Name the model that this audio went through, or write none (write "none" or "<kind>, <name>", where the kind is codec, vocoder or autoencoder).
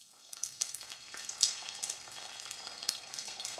codec, SNAC